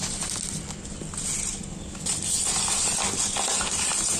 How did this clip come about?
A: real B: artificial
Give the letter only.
A